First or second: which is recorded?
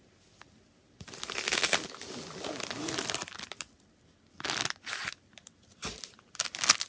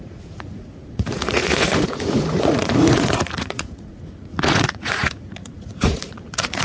first